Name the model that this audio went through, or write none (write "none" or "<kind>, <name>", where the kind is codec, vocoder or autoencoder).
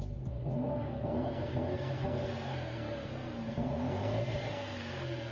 codec, SNAC